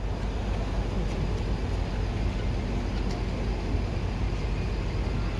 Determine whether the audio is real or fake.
real